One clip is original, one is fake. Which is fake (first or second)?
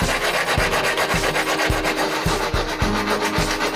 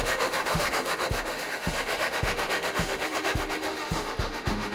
second